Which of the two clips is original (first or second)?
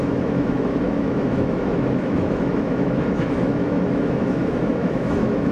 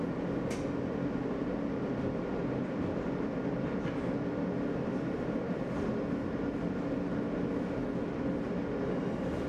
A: second